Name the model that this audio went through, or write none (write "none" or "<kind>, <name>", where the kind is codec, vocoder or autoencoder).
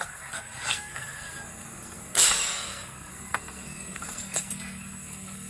codec, SNAC